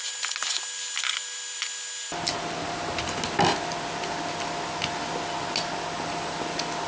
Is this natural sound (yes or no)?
yes